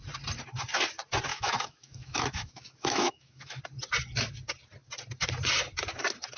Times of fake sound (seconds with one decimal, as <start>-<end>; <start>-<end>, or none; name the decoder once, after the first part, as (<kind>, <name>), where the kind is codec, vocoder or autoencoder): 1.3-3.6 (autoencoder, DAC-VAE)